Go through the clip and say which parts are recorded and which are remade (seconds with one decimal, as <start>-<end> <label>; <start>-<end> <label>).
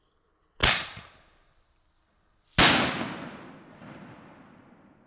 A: 0.0-5.1 recorded